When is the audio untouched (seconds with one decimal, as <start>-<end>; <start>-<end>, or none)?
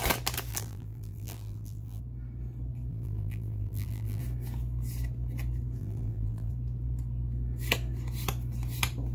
0.0-0.5; 2.0-2.9; 4.2-5.8; 6.5-9.1